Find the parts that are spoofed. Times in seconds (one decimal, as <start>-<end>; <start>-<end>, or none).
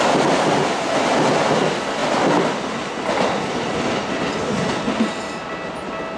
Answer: none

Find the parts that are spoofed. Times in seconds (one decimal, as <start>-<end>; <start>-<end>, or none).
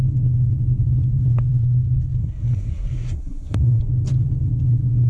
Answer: 2.2-3.9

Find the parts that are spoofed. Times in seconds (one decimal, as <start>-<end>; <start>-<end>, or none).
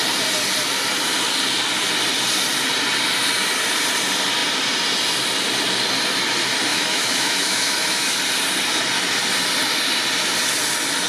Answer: 6.7-8.2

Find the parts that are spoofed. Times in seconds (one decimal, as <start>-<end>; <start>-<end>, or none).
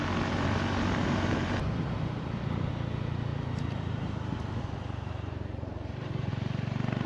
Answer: 1.0-2.7; 3.3-6.3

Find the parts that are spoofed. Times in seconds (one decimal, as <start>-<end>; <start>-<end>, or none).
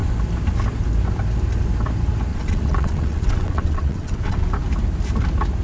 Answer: 2.3-4.5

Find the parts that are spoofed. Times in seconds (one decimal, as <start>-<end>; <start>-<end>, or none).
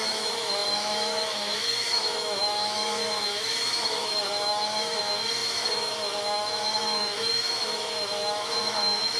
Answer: 0.0-9.2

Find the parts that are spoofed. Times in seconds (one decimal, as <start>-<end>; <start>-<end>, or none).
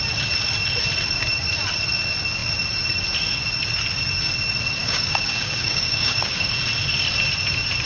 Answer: 4.8-6.5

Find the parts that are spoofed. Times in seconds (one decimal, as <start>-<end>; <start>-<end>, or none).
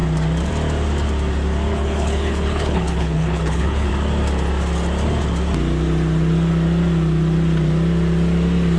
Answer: 1.7-3.9